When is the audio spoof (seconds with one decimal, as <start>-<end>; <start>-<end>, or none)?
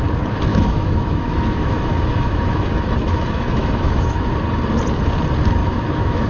0.5-4.3; 5.6-6.3